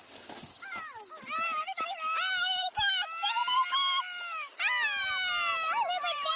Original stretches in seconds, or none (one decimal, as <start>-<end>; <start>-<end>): 0.0-6.4